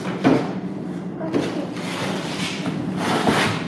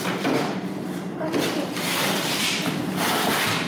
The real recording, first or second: first